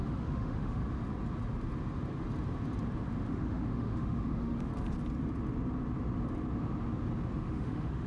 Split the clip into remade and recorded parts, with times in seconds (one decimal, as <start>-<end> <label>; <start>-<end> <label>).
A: 0.0-0.8 remade; 0.8-3.3 recorded; 3.3-4.7 remade; 4.7-7.4 recorded; 7.4-8.1 remade